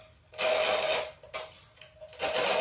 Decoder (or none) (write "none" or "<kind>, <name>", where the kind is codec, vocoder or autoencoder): none